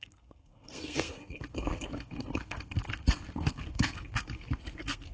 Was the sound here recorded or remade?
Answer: remade